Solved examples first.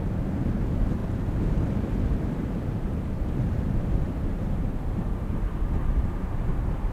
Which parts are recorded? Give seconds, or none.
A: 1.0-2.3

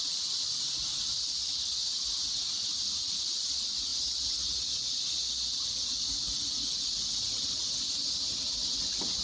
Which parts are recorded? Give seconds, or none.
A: 0.0-2.7; 3.4-9.2